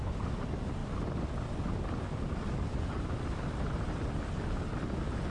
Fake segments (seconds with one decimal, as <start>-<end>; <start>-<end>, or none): none